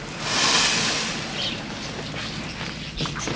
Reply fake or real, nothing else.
real